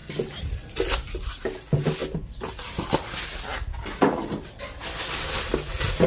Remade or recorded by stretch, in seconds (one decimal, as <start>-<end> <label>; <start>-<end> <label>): 0.0-6.1 recorded